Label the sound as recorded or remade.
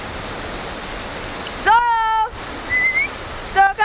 recorded